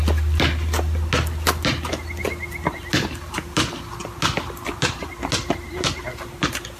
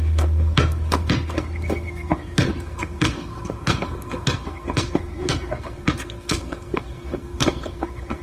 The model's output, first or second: second